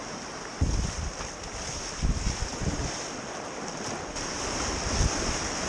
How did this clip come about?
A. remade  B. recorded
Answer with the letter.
B